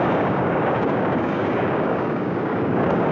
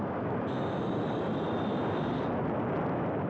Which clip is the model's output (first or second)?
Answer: first